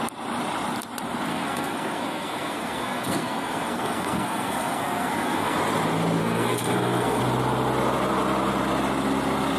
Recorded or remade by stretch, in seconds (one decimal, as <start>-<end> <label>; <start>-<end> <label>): 0.0-1.3 recorded; 1.3-5.6 remade; 5.6-6.2 recorded; 6.2-7.2 remade; 7.2-9.6 recorded